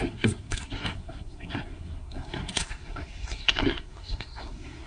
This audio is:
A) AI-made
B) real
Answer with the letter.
A